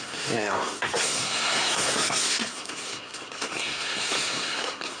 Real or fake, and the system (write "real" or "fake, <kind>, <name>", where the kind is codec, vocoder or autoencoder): fake, codec, SNAC